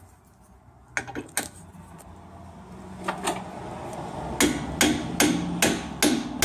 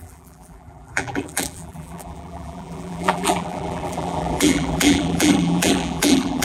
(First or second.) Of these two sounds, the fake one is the second